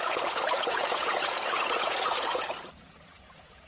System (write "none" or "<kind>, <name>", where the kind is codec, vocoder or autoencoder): vocoder, Vocos